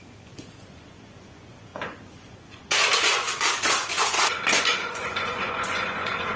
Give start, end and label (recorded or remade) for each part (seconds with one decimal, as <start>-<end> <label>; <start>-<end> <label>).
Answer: 0.0-6.4 remade